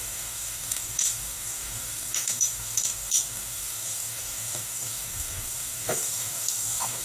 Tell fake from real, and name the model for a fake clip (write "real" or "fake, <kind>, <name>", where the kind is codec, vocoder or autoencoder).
fake, codec, DAC